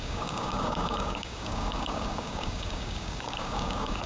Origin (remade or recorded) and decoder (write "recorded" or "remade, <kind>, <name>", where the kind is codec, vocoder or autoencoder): remade, codec, DAC